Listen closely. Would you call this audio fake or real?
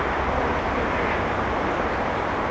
fake